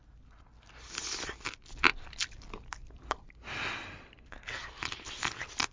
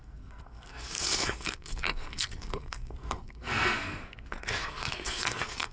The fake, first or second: second